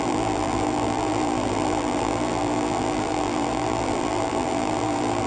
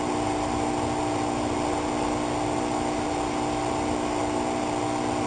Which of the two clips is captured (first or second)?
second